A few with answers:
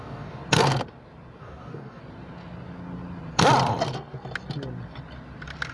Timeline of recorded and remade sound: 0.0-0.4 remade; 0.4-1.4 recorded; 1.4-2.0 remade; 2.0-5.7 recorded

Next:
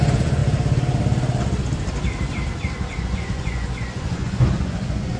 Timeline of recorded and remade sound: 0.0-0.4 remade; 0.4-3.0 recorded; 3.0-5.2 remade

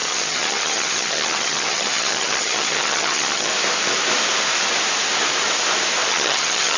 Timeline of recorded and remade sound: 0.0-3.5 remade; 3.5-6.1 recorded; 6.1-6.8 remade